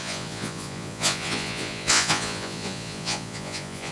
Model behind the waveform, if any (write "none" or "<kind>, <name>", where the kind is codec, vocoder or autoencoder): vocoder, Vocos